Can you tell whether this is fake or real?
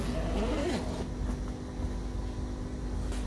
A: real